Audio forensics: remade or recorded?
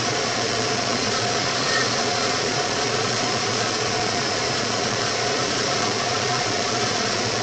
remade